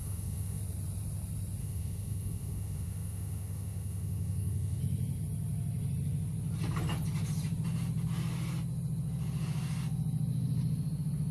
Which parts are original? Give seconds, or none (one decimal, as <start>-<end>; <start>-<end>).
0.6-1.6; 4.8-11.3